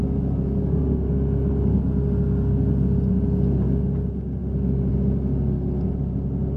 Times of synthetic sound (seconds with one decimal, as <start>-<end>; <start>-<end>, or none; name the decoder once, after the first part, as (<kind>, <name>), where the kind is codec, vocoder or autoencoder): none